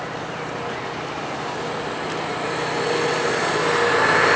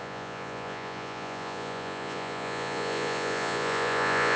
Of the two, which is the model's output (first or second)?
second